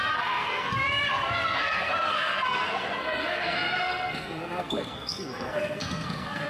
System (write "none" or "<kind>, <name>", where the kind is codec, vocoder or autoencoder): codec, SNAC